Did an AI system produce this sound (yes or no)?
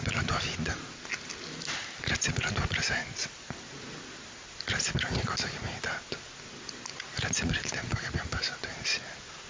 no